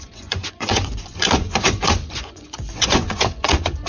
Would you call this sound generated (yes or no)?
yes